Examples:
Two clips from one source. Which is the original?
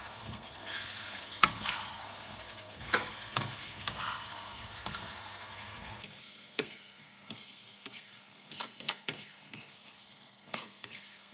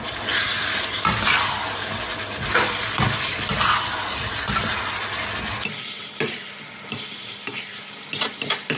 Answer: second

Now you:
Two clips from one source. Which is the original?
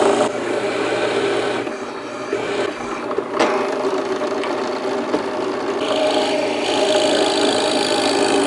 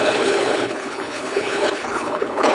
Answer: first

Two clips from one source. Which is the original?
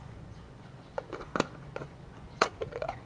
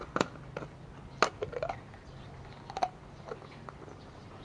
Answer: second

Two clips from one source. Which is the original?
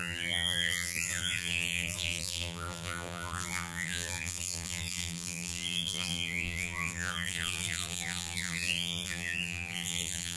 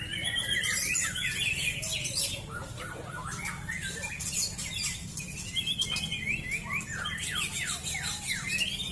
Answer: second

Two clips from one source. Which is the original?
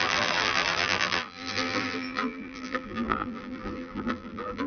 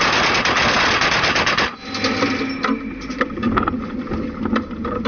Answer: second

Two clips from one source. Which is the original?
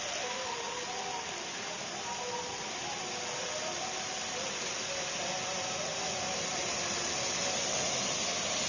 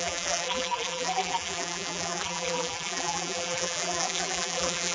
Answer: first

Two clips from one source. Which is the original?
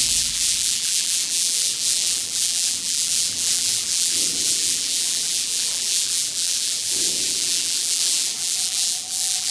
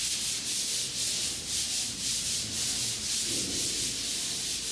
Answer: second